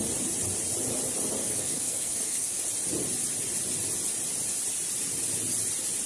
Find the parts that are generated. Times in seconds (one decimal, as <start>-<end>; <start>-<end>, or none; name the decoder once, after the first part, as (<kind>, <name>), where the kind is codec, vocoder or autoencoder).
1.4-2.6 (codec, SNAC)